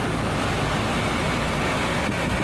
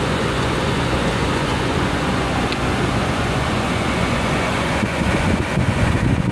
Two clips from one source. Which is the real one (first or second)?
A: first